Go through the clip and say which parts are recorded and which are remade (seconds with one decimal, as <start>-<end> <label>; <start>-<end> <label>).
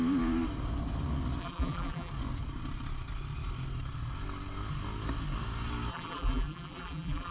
0.0-1.4 recorded; 1.4-2.1 remade; 2.1-5.9 recorded; 5.9-7.3 remade